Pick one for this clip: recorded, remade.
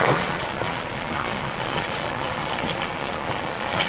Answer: remade